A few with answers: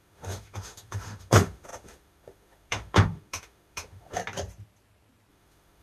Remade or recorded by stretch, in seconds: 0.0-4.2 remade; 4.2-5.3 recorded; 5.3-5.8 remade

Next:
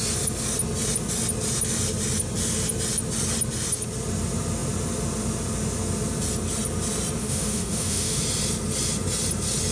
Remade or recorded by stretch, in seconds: 0.0-7.2 recorded; 7.2-8.2 remade; 8.2-9.7 recorded

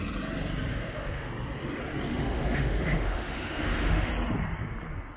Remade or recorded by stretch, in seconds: 0.0-0.7 recorded; 0.7-1.3 remade; 1.3-2.1 recorded; 2.1-4.1 remade; 4.1-5.2 recorded

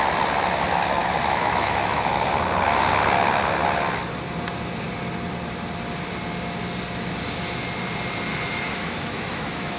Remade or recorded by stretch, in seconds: 0.0-1.0 recorded; 1.0-2.1 remade; 2.1-8.3 recorded; 8.3-9.8 remade

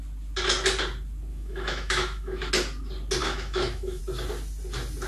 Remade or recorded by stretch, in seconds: 0.0-1.3 recorded; 1.3-2.5 remade; 2.5-3.2 recorded; 3.2-4.0 remade; 4.0-5.1 recorded

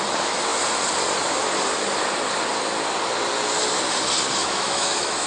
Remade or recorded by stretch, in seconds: 0.0-4.4 recorded; 4.4-5.3 remade

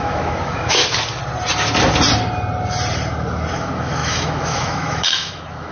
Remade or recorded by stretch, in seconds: 0.0-0.8 remade; 0.8-3.5 recorded; 3.5-5.7 remade

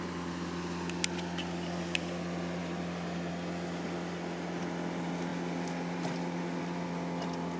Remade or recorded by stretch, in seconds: 0.0-7.6 recorded